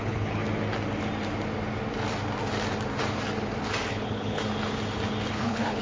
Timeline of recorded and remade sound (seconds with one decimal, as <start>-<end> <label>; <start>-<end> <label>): 0.0-0.4 remade; 0.4-3.9 recorded; 3.9-4.4 remade; 4.4-5.3 recorded; 5.3-5.8 remade